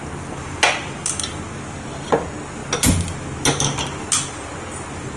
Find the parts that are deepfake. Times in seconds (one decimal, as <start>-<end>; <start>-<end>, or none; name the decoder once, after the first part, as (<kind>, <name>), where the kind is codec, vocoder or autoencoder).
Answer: none

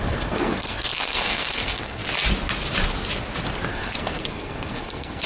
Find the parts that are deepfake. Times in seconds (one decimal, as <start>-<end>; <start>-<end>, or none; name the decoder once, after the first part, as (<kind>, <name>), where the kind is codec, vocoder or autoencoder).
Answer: 0.0-2.0 (codec, SNAC); 3.7-5.3

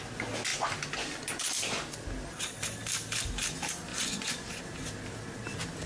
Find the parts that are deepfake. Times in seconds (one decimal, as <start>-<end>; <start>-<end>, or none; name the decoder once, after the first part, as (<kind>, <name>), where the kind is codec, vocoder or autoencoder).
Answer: 3.9-4.5 (vocoder, Vocos)